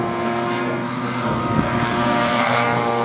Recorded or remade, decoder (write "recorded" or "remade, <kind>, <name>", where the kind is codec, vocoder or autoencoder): remade, codec, SNAC